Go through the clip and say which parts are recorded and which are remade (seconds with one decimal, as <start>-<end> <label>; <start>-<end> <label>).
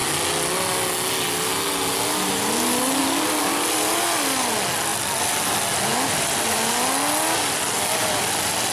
0.0-8.7 recorded